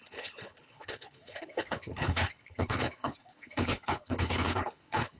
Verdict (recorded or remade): remade